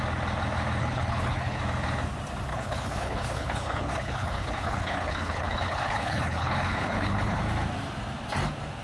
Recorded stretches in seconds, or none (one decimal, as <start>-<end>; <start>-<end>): 0.0-0.8; 1.6-2.5; 7.4-8.8